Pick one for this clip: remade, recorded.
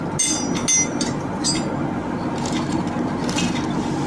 recorded